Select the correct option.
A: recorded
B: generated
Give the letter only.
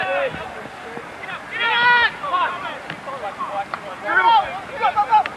A